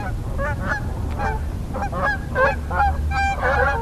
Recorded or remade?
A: recorded